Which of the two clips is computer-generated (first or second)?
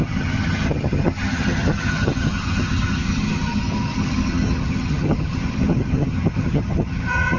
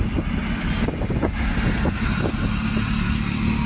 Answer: first